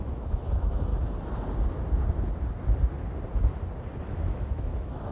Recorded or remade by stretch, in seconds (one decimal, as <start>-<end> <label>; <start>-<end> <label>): 0.0-0.9 remade; 0.9-4.0 recorded; 4.0-5.1 remade

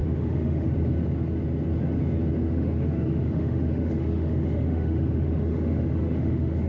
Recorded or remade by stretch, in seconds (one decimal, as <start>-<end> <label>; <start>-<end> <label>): 0.0-0.7 remade; 0.7-2.4 recorded; 2.4-6.7 remade

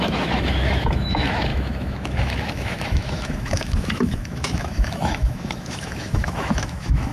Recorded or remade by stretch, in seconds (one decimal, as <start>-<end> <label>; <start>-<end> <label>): 0.0-7.1 remade

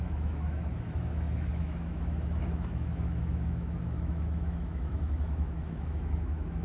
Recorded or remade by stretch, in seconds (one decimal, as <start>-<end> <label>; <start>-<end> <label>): 0.0-6.6 remade

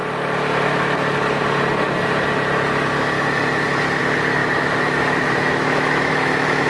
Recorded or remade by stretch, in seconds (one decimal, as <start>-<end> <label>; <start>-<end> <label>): 0.0-4.4 recorded; 4.4-6.7 remade

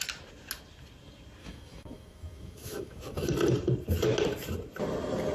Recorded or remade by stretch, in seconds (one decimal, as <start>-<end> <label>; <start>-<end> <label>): 0.0-1.4 recorded; 1.4-3.3 remade; 3.3-5.3 recorded

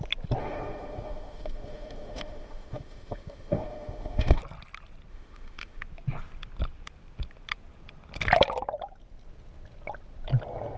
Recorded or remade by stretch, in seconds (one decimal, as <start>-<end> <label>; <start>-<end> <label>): 0.0-0.4 recorded; 0.4-4.4 remade; 4.4-5.1 recorded; 5.1-5.8 remade; 5.8-10.8 recorded